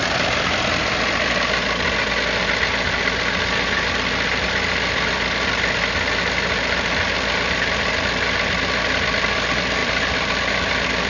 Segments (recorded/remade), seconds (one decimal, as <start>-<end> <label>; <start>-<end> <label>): 0.0-9.8 recorded; 9.8-10.3 remade; 10.3-11.1 recorded